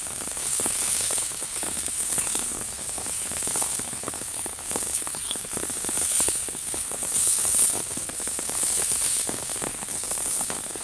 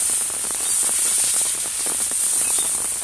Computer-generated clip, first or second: first